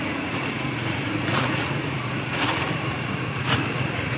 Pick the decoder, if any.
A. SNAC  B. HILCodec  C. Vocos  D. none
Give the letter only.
C